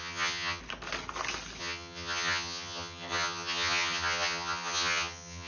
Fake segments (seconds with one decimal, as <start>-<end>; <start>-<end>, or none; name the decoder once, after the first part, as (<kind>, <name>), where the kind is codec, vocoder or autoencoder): 0.0-0.6 (vocoder, HiFi-GAN); 1.6-5.5